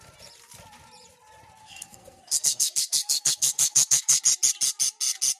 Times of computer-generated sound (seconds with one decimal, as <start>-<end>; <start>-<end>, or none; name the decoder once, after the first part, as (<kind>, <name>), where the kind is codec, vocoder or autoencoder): 1.6-4.2 (codec, SNAC)